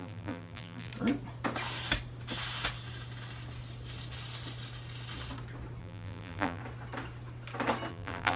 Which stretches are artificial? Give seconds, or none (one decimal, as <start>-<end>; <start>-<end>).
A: 0.0-0.9; 5.8-6.6; 7.9-8.4